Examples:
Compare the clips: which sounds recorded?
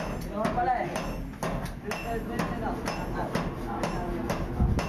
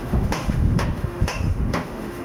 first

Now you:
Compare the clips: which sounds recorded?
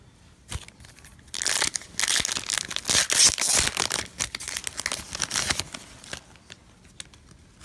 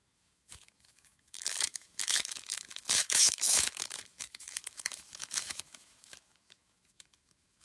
first